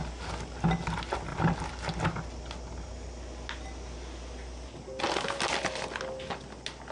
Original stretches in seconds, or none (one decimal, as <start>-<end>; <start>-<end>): 0.0-6.9